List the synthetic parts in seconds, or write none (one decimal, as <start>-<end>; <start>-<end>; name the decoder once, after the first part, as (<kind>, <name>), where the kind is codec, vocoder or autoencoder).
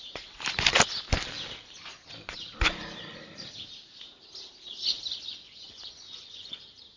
5.3-6.6 (vocoder, Vocos)